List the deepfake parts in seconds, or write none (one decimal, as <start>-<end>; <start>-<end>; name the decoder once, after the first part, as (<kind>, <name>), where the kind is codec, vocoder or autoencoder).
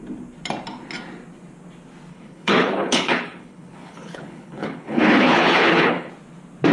2.1-6.1 (codec, HILCodec)